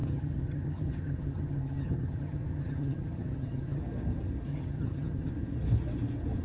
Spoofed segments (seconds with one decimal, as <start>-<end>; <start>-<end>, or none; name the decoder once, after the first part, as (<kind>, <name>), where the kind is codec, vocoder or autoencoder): 0.0-3.8 (vocoder, HiFi-GAN); 4.5-5.3